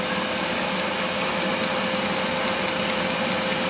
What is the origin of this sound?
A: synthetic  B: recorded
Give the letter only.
B